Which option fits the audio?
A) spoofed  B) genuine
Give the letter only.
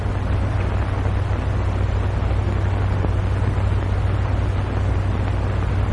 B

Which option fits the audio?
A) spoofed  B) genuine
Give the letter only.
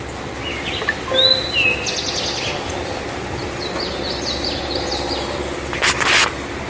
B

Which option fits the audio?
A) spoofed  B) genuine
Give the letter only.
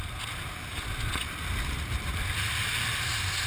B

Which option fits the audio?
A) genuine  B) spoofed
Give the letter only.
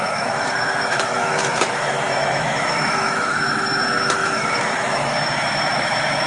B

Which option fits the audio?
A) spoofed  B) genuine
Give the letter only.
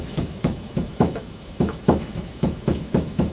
A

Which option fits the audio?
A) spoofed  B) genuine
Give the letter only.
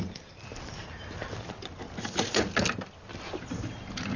B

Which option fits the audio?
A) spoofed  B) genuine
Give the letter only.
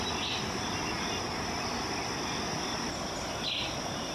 B